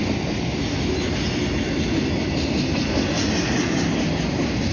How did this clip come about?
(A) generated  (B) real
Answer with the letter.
B